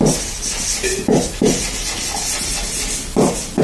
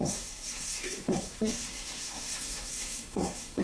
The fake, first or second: second